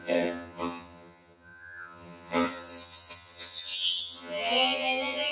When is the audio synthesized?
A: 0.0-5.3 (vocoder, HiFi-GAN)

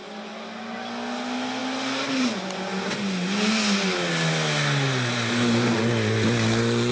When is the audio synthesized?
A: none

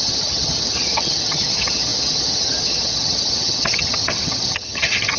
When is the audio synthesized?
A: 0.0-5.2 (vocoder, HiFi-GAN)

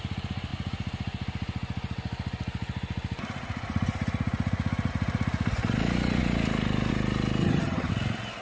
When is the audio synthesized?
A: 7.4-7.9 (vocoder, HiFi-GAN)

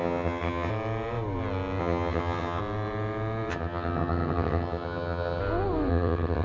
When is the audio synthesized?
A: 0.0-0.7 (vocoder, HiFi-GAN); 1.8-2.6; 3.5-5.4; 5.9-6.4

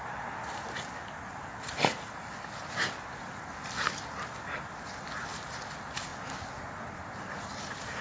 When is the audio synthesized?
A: none